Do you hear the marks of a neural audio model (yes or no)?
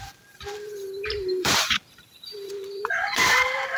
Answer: yes